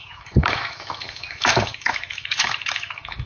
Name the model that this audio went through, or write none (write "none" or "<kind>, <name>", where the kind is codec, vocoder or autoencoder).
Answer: autoencoder, DAC-VAE